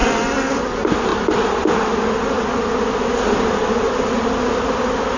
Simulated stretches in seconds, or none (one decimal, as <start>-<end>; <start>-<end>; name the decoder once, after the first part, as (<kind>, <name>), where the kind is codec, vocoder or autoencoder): none